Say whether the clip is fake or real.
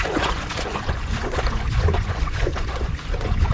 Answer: fake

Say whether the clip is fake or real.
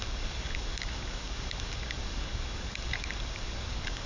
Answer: fake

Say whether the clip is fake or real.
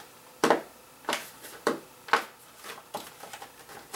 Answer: real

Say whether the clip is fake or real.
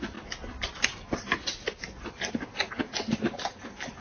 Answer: real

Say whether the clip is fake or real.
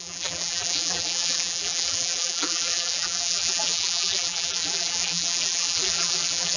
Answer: fake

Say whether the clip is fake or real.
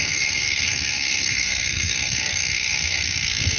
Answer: fake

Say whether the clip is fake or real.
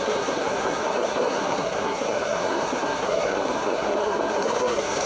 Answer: fake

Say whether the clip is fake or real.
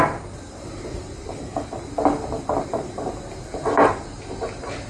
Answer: real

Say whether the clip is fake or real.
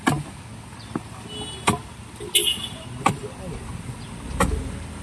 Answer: real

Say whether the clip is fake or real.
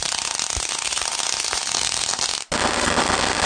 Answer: real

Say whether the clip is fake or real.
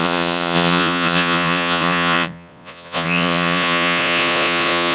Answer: fake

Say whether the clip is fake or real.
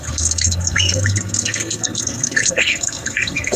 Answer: fake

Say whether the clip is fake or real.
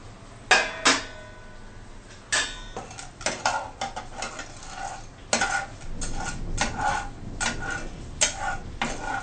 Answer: real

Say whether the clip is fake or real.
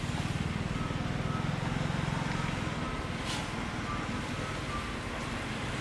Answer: real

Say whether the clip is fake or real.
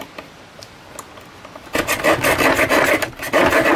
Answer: real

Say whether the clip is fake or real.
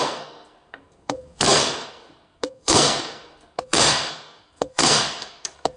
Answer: fake